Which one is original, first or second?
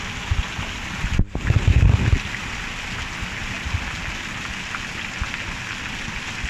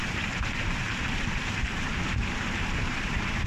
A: first